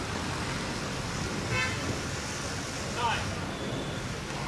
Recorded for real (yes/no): yes